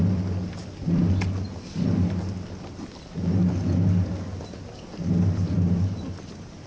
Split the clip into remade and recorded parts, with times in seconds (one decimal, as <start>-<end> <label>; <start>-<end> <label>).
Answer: 0.0-6.7 recorded